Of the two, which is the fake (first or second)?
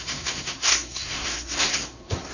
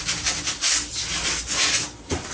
first